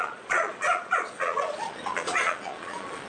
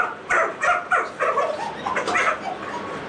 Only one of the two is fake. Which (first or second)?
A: first